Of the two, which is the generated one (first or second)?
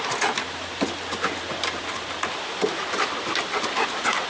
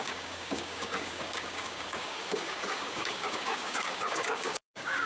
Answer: second